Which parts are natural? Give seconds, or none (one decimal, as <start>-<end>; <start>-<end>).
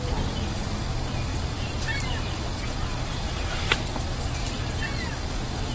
0.0-5.7